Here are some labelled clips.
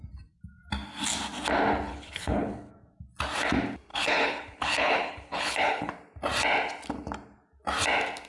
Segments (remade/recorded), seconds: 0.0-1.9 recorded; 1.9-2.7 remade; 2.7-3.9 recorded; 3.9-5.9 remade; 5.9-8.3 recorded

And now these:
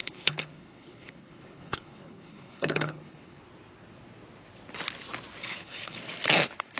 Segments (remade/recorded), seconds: 0.0-3.4 remade; 3.4-5.4 recorded; 5.4-6.0 remade; 6.0-6.8 recorded

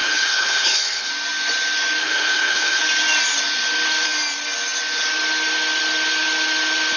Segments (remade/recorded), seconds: 0.0-1.1 remade; 1.1-2.0 recorded; 2.0-2.8 remade; 2.8-7.0 recorded